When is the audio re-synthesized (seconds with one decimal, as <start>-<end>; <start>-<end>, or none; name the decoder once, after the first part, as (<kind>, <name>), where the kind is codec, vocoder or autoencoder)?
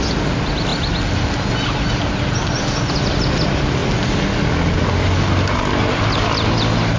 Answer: none